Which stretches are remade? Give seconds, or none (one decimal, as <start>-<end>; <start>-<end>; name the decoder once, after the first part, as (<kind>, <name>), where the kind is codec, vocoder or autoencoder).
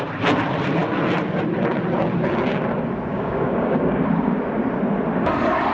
3.1-4.3 (codec, DAC)